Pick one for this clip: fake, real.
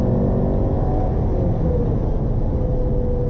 real